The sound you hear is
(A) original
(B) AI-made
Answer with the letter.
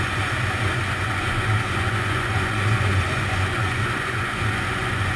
B